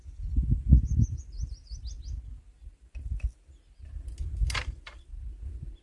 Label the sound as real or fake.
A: real